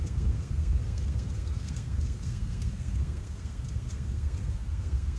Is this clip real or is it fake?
fake